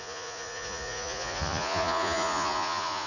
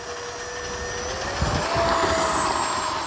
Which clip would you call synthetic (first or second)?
first